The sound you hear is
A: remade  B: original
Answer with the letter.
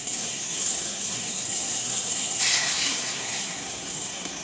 A